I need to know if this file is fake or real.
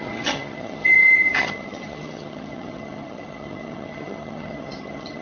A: fake